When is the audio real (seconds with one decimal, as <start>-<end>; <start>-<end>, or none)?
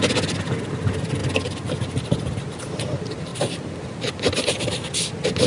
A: 0.0-5.5